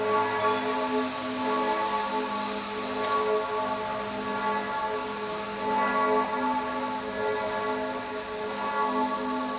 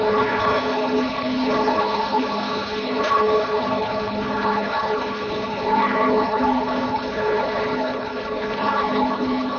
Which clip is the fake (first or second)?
second